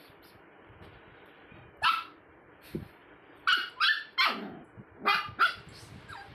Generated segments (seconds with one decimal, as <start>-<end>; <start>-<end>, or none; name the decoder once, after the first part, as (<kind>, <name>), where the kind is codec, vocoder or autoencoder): none